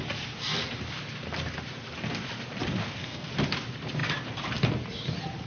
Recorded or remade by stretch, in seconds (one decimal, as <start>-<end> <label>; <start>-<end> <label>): 0.0-2.8 recorded; 2.8-3.3 remade; 3.3-5.5 recorded

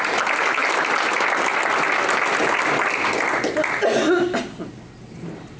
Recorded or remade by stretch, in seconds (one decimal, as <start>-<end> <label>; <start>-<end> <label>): 0.0-5.6 recorded

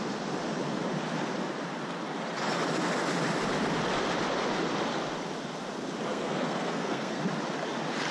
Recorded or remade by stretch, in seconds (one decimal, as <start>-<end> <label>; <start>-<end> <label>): 0.0-6.1 recorded; 6.1-7.2 remade; 7.2-8.1 recorded